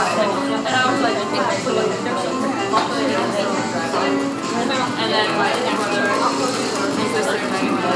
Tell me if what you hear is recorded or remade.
recorded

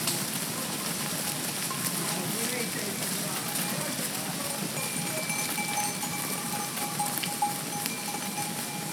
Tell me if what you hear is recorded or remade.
recorded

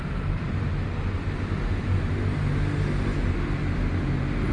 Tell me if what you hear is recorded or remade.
recorded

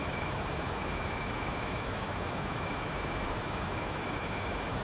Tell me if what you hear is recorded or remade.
remade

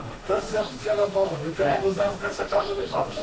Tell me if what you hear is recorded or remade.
remade